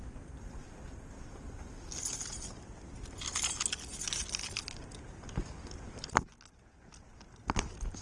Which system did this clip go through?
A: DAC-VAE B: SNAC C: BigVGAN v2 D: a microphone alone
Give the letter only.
D